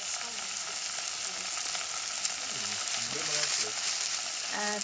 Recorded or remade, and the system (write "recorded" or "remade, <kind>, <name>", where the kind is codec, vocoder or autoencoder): recorded